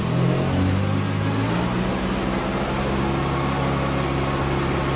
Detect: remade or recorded recorded